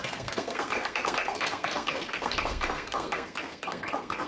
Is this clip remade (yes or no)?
yes